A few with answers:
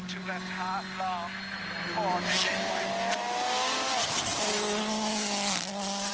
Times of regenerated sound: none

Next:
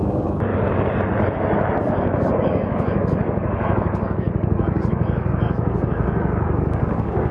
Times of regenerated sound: 0.0-0.5; 1.8-7.3